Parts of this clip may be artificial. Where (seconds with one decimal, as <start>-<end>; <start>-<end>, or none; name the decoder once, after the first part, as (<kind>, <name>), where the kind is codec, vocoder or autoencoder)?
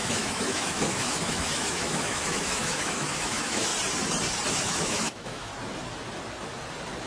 0.0-3.7 (autoencoder, DAC-VAE); 4.5-5.5